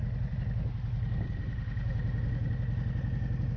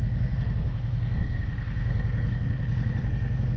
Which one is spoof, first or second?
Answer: second